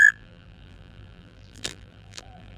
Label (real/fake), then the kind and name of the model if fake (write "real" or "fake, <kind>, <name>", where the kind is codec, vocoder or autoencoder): fake, vocoder, BigVGAN v2